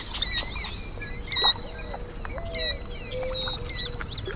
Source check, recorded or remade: recorded